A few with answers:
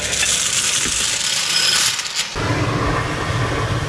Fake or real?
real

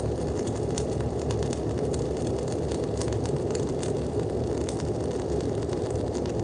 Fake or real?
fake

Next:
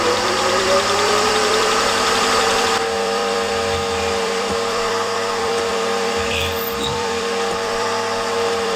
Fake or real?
fake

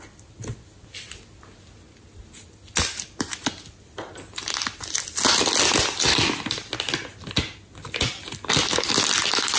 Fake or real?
real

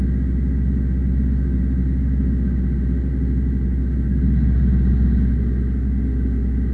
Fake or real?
real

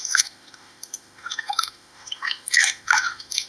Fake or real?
fake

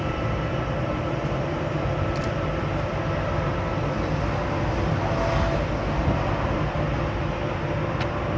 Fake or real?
real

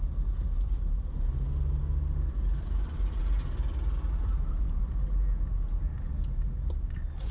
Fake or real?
real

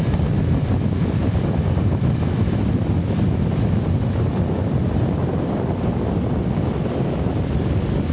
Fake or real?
real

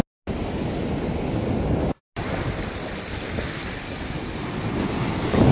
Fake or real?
real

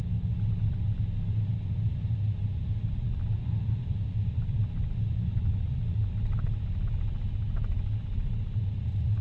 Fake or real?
real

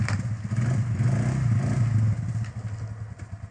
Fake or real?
real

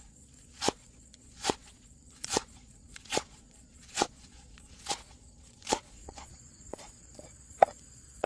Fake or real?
fake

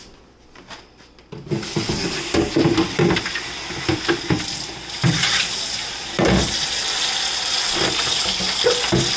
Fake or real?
real